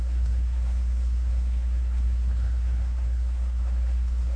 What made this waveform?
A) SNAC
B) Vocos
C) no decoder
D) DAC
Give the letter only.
A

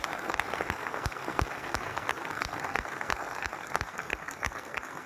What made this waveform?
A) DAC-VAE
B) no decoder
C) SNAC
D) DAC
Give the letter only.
C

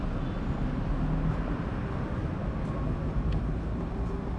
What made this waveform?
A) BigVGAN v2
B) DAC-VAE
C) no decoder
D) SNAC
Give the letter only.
C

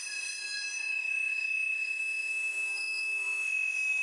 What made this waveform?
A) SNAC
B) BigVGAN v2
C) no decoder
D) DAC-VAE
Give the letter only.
D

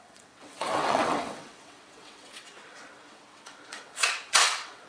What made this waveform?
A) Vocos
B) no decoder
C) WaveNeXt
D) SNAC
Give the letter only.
C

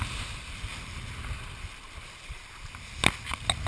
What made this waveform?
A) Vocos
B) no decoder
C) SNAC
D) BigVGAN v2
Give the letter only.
B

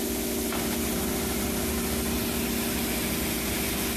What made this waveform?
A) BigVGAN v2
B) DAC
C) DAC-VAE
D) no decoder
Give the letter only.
D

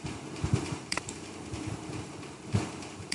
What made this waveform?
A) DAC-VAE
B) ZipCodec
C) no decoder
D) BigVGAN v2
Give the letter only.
D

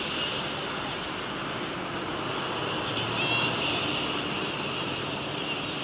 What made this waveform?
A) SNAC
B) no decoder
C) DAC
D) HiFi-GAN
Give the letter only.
B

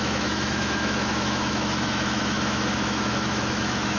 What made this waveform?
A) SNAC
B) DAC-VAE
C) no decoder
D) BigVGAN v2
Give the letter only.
B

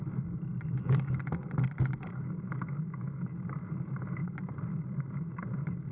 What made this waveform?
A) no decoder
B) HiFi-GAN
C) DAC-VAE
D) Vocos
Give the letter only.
A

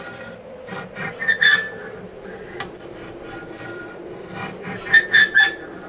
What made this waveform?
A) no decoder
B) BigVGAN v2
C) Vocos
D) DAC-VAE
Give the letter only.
A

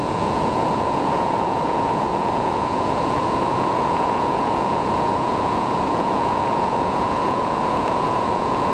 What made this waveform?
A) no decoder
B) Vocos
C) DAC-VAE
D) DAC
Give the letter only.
B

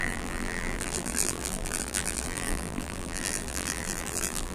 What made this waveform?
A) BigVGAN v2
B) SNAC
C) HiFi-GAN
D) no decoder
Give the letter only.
A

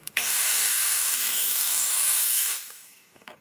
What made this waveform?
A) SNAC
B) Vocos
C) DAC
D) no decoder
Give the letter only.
C